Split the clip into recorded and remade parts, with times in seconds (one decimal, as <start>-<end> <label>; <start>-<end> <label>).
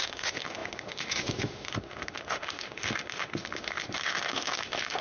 0.0-5.0 remade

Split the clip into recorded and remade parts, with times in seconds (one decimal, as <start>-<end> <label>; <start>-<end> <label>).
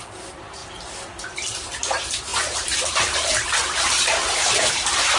0.0-0.6 remade; 0.6-1.1 recorded; 1.1-5.2 remade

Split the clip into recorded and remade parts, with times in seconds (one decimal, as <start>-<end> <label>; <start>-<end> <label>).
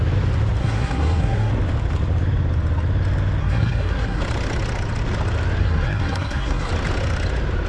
0.0-0.6 recorded; 0.6-1.5 remade; 1.5-3.4 recorded; 3.4-4.2 remade; 4.2-5.6 recorded; 5.6-6.7 remade; 6.7-7.7 recorded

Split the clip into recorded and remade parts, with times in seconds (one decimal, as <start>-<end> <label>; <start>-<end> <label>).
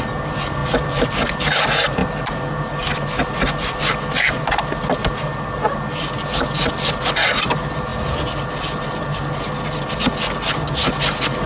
0.0-11.5 recorded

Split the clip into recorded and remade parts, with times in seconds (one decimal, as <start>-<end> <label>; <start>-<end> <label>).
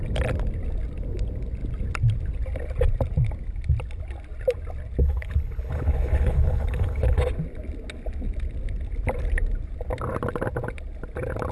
0.0-5.0 recorded; 5.0-7.2 remade; 7.2-11.5 recorded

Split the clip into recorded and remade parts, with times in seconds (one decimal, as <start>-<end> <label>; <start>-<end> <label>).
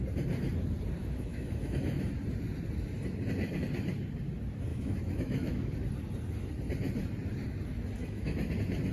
0.0-1.0 recorded; 1.0-2.0 remade; 2.0-4.7 recorded; 4.7-5.7 remade; 5.7-8.0 recorded; 8.0-8.5 remade; 8.5-8.9 recorded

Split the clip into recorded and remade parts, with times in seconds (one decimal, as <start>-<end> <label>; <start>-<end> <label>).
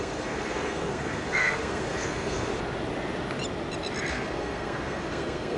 0.0-2.5 remade; 2.5-4.1 recorded; 4.1-5.6 remade